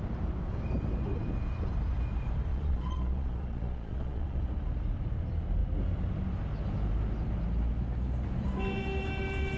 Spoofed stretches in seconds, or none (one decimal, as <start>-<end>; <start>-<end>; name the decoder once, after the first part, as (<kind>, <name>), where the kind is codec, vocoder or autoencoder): 2.5-4.4 (vocoder, Vocos)